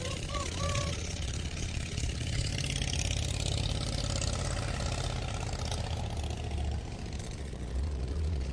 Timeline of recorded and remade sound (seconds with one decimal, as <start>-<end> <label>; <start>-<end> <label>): 0.0-2.5 remade; 2.5-7.2 recorded; 7.2-8.5 remade